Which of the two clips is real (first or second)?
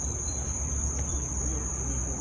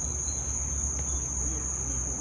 second